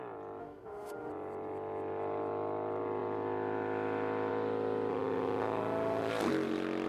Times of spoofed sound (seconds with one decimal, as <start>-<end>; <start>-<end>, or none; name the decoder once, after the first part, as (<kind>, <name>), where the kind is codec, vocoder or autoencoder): 0.4-1.1 (autoencoder, DAC-VAE); 4.9-6.1